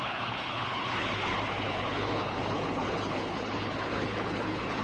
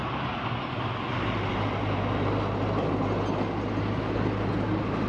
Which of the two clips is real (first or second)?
second